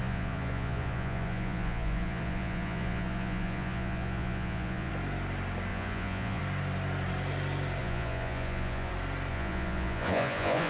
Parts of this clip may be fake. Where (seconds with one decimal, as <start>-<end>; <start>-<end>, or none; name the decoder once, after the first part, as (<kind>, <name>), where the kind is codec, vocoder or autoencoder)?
0.0-4.9 (vocoder, Vocos); 5.7-6.4; 7.8-8.9; 9.3-10.7